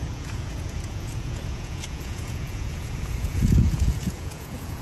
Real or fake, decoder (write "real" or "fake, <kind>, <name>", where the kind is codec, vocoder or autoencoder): fake, vocoder, Vocos